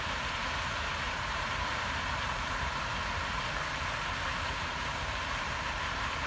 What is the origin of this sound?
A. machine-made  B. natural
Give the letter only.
A